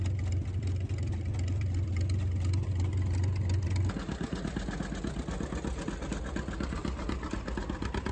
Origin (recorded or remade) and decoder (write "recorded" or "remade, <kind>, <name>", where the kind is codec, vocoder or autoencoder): recorded